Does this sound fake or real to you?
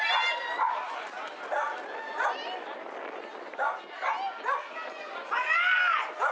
real